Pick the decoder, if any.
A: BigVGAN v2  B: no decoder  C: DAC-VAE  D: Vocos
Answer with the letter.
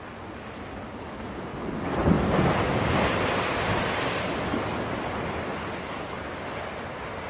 B